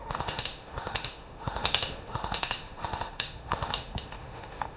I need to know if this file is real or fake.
fake